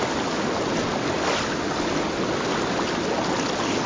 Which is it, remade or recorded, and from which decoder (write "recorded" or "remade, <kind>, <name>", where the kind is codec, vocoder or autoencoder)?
recorded